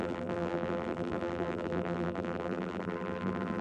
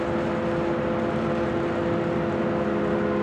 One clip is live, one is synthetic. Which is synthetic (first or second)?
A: first